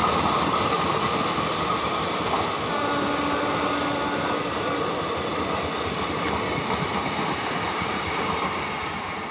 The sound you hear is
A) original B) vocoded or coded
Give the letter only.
A